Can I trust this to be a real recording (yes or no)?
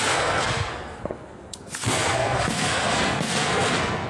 no